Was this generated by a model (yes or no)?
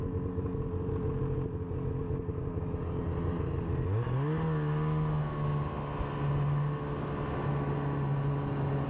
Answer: no